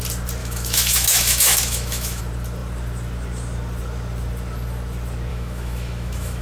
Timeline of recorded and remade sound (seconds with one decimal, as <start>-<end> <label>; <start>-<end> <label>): 0.0-0.4 recorded; 0.4-2.2 remade; 2.2-5.3 recorded; 5.3-6.4 remade